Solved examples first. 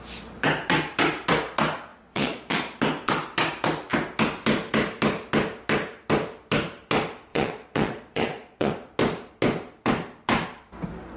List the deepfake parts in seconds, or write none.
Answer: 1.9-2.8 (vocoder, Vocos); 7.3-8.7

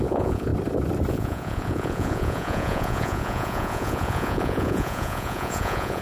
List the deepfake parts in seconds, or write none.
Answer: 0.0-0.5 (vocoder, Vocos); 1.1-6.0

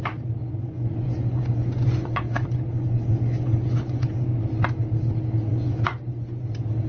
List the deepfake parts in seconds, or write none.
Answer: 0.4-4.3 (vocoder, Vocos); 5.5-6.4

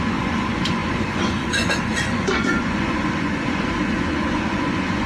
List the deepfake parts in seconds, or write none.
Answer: 0.0-5.1 (vocoder, Vocos)

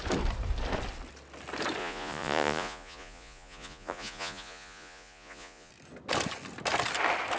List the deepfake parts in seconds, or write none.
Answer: 1.8-5.7 (vocoder, Vocos)